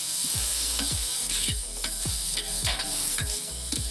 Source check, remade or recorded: remade